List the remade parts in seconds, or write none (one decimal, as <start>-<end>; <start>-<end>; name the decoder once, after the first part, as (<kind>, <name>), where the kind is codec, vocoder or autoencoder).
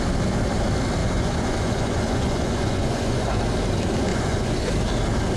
1.0-3.4 (vocoder, Vocos); 4.1-4.7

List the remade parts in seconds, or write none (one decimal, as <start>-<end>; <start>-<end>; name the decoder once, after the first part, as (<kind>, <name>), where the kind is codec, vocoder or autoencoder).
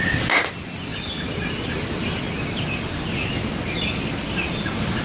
none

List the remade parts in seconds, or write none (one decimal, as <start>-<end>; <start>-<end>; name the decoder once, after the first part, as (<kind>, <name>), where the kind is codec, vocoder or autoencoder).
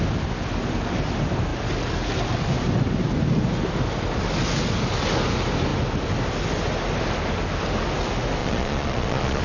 8.4-9.4 (vocoder, Vocos)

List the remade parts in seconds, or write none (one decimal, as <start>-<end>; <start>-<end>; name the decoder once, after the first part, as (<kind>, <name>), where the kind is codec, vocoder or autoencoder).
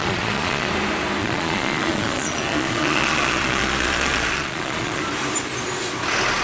0.0-0.7 (vocoder, Vocos); 1.2-5.0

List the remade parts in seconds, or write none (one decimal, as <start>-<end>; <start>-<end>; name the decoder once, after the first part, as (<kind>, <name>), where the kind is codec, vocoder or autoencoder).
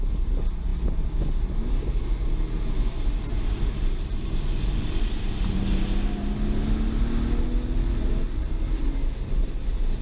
none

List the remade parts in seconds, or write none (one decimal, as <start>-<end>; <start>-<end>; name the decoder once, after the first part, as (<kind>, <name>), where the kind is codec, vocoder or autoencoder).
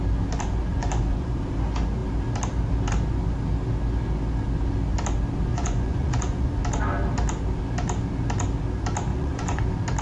0.7-1.3 (vocoder, Vocos); 5.5-6.6; 9.1-9.6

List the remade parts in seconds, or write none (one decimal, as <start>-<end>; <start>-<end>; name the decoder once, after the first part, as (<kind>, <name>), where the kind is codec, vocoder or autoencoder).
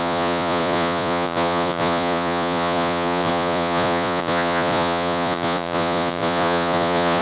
0.0-7.2 (vocoder, Vocos)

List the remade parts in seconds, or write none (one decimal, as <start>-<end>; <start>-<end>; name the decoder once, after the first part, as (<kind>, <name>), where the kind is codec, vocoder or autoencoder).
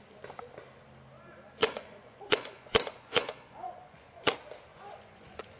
1.6-4.3 (vocoder, Vocos); 4.7-5.6